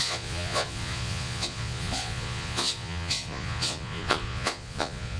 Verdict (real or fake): fake